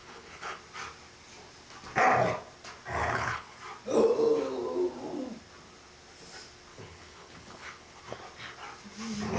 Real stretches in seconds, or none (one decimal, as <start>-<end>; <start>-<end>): 0.6-3.0; 3.6-6.7; 8.0-9.4